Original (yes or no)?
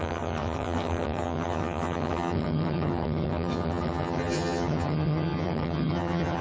no